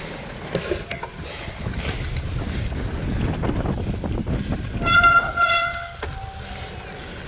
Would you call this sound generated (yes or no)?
no